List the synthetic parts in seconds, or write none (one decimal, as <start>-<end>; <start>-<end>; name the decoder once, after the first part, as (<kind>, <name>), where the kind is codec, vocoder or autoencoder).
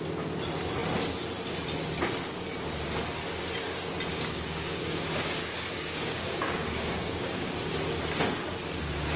4.1-7.5 (codec, DAC)